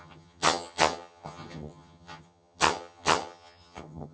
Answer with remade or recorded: remade